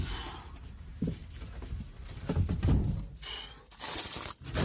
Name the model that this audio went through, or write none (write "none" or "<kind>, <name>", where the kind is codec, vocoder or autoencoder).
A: none